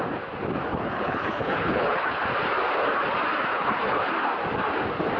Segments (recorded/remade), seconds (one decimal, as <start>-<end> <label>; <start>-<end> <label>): 0.0-0.7 recorded; 0.7-2.2 remade; 2.2-3.5 recorded; 3.5-4.1 remade; 4.1-5.2 recorded

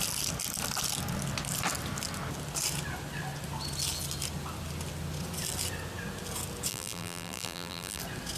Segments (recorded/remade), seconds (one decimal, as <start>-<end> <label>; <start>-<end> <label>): 0.0-6.7 recorded; 6.7-8.0 remade; 8.0-8.4 recorded

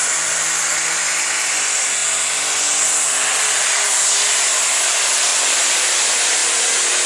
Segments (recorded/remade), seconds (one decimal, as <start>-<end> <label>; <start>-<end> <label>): 0.0-5.3 recorded; 5.3-6.0 remade; 6.0-7.1 recorded

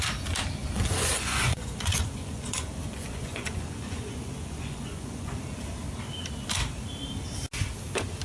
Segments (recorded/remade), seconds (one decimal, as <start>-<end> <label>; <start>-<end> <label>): 0.0-0.6 recorded; 0.6-5.4 remade; 5.4-8.2 recorded